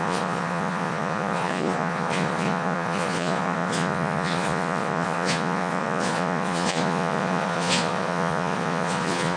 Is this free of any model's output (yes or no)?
no